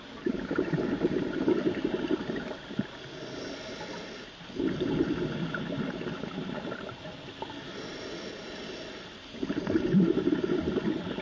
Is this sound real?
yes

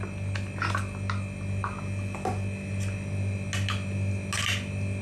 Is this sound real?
yes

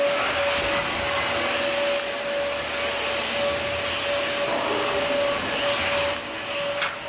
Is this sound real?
yes